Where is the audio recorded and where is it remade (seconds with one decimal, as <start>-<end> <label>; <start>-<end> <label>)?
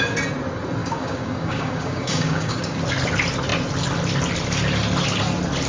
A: 0.0-0.8 recorded; 0.8-2.8 remade; 2.8-5.7 recorded